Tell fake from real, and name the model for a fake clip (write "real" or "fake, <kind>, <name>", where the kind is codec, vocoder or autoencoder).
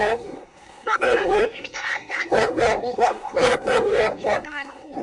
fake, codec, SNAC